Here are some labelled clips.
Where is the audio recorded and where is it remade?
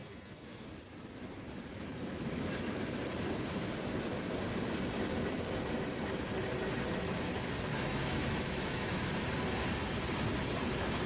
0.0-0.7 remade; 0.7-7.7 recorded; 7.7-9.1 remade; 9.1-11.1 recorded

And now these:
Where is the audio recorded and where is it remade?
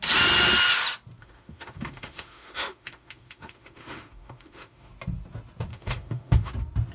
0.0-1.2 recorded; 1.2-4.9 remade; 4.9-5.7 recorded; 5.7-6.5 remade; 6.5-6.9 recorded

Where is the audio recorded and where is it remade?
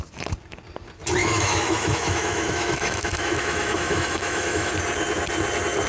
0.0-1.2 recorded; 1.2-4.7 remade; 4.7-5.9 recorded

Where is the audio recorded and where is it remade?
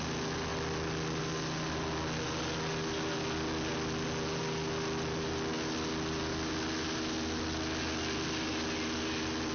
0.0-9.5 recorded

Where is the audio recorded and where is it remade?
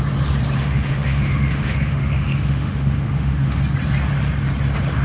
0.0-0.6 recorded; 0.6-3.6 remade; 3.6-5.0 recorded